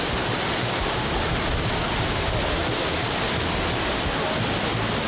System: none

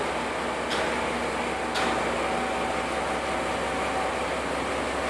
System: none